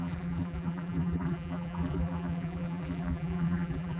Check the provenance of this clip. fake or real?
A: fake